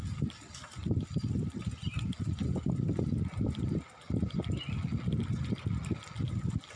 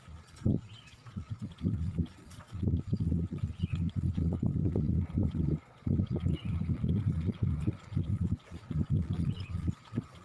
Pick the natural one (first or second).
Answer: first